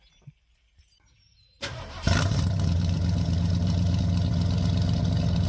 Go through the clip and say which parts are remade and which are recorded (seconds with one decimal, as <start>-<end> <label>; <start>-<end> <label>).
0.0-1.3 recorded; 1.3-4.0 remade; 4.0-5.5 recorded